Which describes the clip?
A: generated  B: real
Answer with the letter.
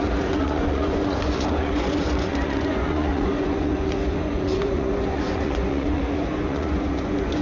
A